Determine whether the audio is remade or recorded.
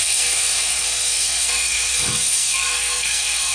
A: remade